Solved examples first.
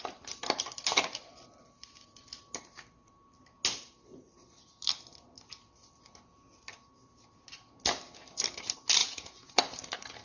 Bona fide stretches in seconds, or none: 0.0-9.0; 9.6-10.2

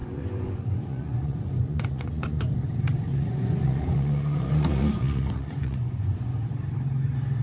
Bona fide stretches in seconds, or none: 2.6-3.1; 6.3-7.4

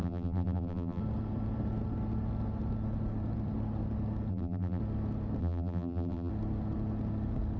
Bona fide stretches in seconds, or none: 1.0-4.3; 4.8-5.4; 6.3-7.6

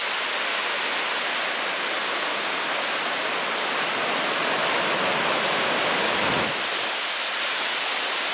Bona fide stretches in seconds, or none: 0.0-8.3

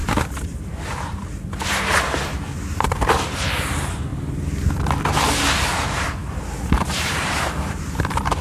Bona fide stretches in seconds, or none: 1.2-2.7; 4.1-5.6

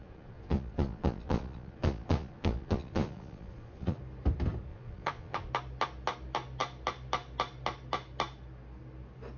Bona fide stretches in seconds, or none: 4.0-4.7; 5.5-9.4

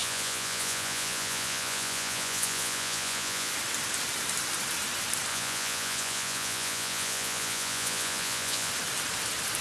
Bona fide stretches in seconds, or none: 3.5-5.3; 8.7-9.6

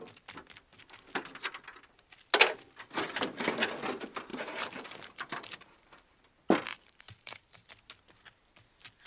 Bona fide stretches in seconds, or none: 0.0-4.3; 6.2-6.7; 7.7-9.1